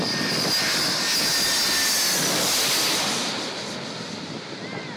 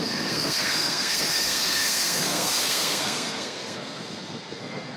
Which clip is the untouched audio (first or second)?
first